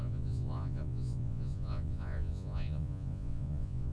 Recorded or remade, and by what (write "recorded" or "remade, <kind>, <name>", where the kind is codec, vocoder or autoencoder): remade, vocoder, Vocos